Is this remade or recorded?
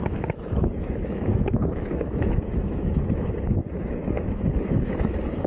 remade